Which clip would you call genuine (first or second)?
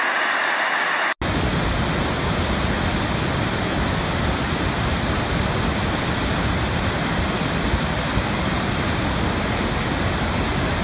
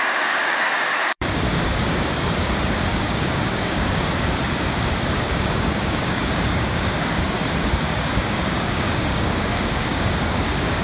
first